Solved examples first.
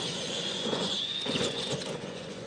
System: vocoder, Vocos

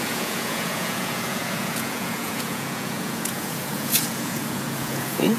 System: vocoder, Vocos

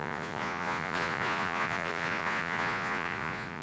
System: vocoder, Vocos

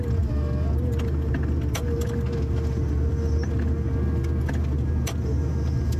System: none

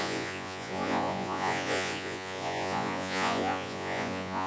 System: vocoder, Vocos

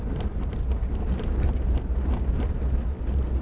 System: none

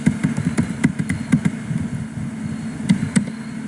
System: none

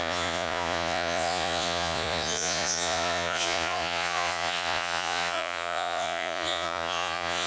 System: vocoder, Vocos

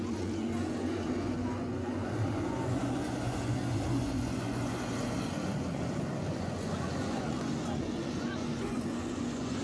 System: vocoder, Vocos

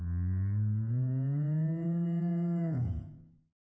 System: vocoder, Vocos